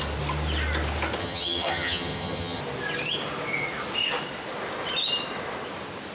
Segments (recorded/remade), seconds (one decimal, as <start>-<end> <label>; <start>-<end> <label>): 0.0-1.2 recorded; 1.2-2.6 remade; 2.6-6.1 recorded